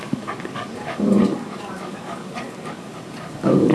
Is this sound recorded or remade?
remade